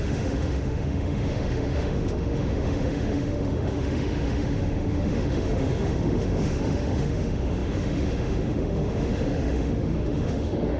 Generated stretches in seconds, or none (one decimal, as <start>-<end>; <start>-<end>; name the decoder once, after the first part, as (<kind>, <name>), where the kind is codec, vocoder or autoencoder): 0.0-10.8 (autoencoder, DAC-VAE)

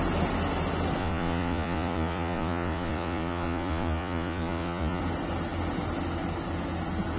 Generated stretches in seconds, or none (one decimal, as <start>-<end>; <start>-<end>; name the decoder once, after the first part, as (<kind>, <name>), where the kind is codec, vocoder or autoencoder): 1.0-5.0 (vocoder, Vocos)

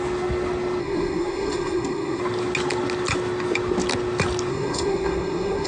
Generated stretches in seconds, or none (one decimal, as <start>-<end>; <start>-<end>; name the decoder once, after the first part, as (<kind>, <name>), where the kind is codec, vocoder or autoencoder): 0.8-2.2 (codec, SNAC); 4.5-5.7